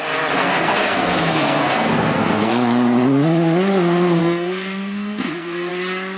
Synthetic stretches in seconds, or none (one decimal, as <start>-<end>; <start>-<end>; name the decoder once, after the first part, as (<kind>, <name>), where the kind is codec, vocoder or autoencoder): 0.4-2.5 (codec, SNAC); 4.2-5.7